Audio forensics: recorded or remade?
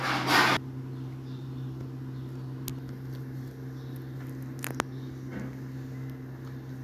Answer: recorded